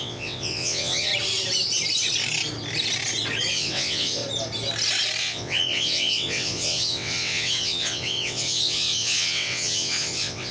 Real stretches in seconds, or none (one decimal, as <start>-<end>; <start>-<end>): 1.1-3.5; 4.2-5.2